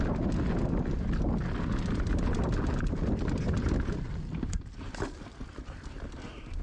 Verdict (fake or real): real